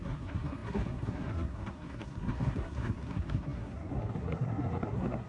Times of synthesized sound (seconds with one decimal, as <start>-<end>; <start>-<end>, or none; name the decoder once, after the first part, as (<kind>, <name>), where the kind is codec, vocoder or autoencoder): 0.0-5.3 (codec, SNAC)